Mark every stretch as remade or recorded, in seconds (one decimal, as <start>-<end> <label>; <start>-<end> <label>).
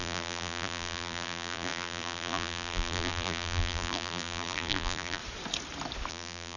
0.0-5.2 remade; 5.2-6.1 recorded; 6.1-6.6 remade